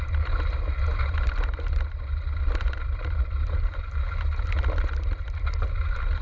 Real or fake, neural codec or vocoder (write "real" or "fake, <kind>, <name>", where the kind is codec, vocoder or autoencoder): real